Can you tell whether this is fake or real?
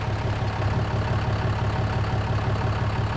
real